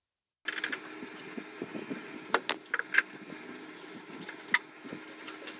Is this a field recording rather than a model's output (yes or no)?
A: yes